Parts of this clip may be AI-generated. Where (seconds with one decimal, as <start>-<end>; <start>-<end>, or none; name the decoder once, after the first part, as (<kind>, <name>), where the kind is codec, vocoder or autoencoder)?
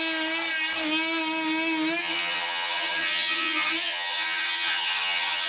2.0-5.5 (vocoder, HiFi-GAN)